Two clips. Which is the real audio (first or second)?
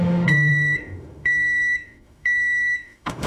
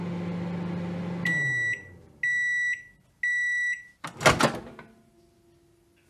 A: second